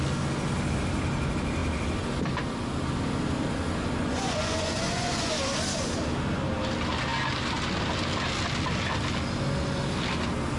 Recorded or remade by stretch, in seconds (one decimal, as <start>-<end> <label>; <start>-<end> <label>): 0.0-4.0 recorded; 4.0-5.3 remade; 5.3-10.6 recorded